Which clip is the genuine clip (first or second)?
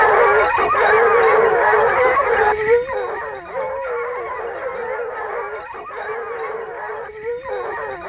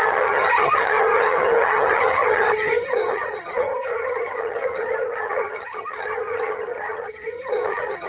first